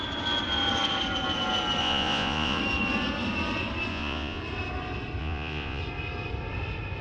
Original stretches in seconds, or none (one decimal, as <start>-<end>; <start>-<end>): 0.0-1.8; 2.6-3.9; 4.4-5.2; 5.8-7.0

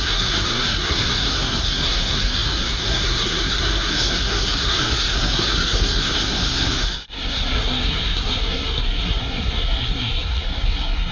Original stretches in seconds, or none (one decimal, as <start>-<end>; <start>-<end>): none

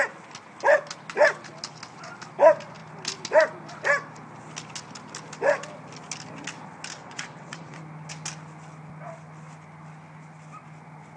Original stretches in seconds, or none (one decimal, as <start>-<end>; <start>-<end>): 0.0-7.0; 7.8-11.2

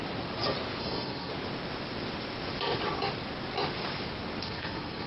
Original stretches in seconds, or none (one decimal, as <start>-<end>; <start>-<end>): 0.0-0.8; 1.3-4.4

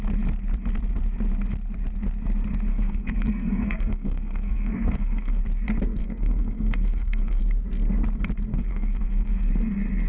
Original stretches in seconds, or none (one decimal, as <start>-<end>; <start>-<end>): 0.0-2.7; 5.4-6.0; 7.4-8.5; 9.5-10.1